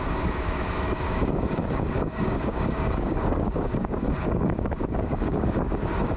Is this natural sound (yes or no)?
no